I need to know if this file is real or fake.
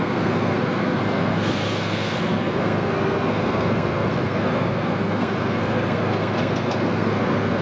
fake